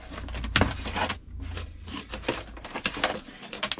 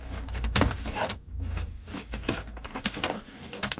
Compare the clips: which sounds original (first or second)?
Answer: first